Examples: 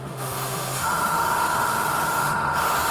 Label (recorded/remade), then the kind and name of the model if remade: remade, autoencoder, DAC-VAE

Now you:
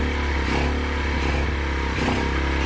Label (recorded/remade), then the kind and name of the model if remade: recorded